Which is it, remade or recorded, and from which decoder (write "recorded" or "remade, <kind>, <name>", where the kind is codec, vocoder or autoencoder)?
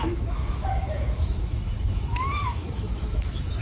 remade, autoencoder, DAC-VAE